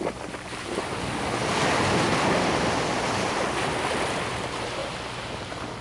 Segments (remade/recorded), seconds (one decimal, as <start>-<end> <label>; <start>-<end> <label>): 0.0-5.8 recorded